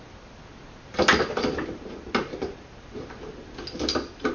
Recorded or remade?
recorded